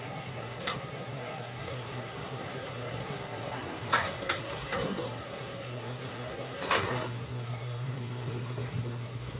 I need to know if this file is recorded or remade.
remade